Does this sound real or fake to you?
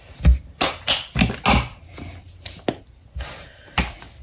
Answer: real